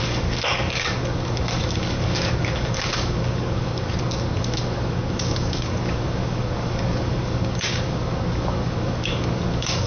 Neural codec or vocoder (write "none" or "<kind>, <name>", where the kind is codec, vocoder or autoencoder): codec, DAC